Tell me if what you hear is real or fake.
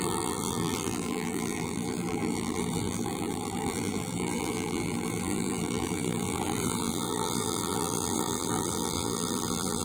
fake